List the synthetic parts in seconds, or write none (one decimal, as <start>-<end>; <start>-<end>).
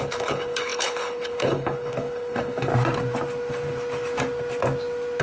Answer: 0.0-2.7